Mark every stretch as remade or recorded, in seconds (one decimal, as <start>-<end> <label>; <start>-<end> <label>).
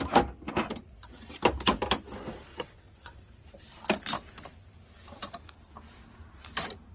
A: 0.0-2.5 recorded; 2.5-3.4 remade; 3.4-6.9 recorded